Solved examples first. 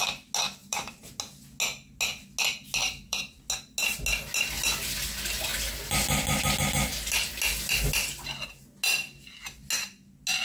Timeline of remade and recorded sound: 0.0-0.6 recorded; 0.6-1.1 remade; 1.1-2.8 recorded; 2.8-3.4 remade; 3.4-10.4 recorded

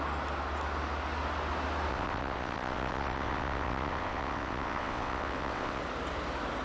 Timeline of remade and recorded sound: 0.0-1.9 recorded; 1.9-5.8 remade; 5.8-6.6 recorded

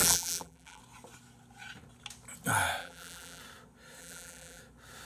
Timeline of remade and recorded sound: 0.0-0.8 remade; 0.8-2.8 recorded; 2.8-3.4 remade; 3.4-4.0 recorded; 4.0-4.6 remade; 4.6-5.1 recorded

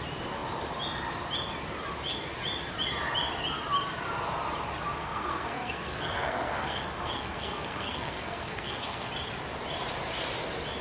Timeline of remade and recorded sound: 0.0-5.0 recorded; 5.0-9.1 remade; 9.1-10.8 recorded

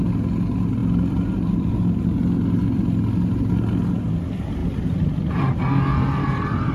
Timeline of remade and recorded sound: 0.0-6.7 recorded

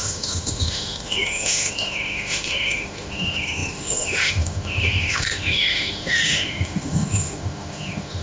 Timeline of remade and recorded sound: 0.0-8.2 remade

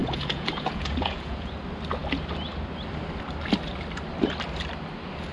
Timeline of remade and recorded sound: 0.0-1.5 remade; 1.5-5.3 recorded

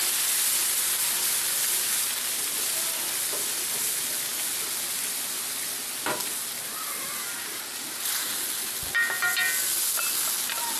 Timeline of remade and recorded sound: 0.0-10.8 recorded